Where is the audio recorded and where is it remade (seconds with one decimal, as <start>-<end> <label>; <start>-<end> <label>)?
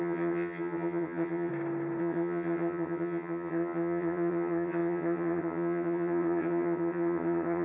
0.0-1.5 remade; 1.5-2.0 recorded; 2.0-7.6 remade